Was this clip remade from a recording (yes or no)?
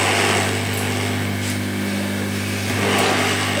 no